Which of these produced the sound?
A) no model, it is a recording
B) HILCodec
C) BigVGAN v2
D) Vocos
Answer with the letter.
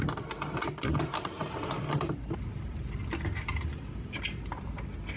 A